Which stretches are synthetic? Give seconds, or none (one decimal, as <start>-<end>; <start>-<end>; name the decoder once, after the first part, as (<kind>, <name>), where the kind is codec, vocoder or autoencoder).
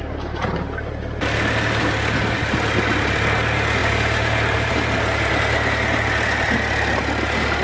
none